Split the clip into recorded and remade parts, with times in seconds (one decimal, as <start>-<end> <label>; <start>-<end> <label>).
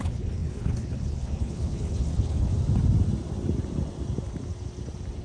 0.0-2.5 remade; 2.5-5.2 recorded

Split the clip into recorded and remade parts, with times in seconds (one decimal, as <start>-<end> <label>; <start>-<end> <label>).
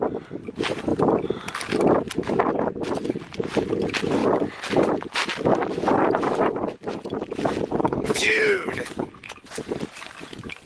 0.0-7.8 recorded; 7.8-9.5 remade; 9.5-10.7 recorded